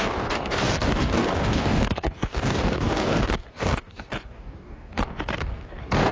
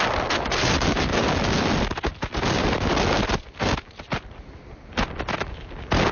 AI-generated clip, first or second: first